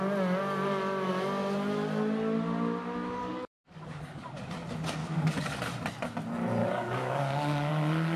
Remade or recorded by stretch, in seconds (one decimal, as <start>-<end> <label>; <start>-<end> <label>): 0.0-3.2 recorded; 3.2-4.4 remade; 4.4-5.0 recorded; 5.0-5.6 remade; 5.6-6.6 recorded; 6.6-7.7 remade; 7.7-8.2 recorded